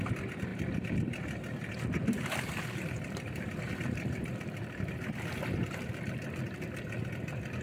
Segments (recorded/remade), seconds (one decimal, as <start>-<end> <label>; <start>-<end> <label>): 0.0-7.6 remade